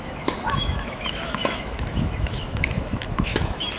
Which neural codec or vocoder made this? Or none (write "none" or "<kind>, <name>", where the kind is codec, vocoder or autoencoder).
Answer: autoencoder, DAC-VAE